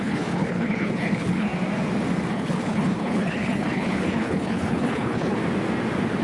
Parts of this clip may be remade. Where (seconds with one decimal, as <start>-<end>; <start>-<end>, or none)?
0.0-1.5; 2.3-5.4